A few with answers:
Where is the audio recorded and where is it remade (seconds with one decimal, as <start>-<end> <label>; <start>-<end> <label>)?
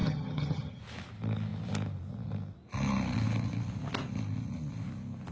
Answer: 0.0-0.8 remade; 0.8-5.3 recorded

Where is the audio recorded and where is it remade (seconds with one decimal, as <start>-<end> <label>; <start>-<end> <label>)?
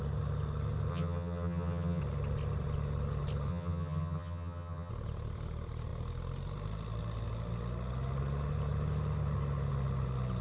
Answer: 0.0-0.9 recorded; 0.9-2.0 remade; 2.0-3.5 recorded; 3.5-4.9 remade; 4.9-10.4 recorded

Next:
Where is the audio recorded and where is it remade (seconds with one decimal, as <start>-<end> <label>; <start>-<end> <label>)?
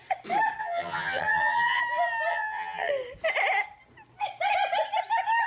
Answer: 0.0-0.6 recorded; 0.6-1.8 remade; 1.8-2.3 recorded; 2.3-2.9 remade; 2.9-5.5 recorded